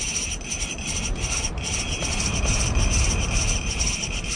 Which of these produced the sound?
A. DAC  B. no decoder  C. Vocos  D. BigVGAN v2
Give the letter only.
D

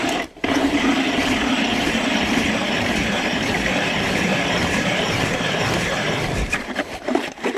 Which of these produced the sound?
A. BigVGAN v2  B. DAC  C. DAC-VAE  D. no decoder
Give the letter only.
A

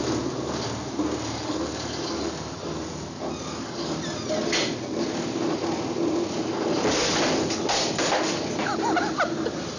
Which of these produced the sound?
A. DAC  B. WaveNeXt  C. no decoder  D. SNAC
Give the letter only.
C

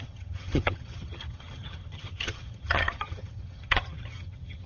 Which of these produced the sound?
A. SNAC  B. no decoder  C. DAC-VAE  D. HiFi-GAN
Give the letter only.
D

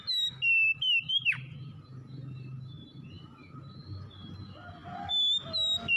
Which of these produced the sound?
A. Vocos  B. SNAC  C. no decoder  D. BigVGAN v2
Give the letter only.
C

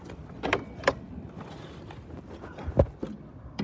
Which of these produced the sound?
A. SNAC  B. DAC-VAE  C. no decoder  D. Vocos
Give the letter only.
C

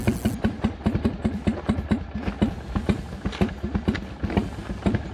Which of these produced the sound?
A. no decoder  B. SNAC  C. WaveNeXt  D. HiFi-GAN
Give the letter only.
A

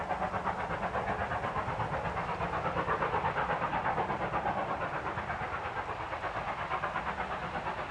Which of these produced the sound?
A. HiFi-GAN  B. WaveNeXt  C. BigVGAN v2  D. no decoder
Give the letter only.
D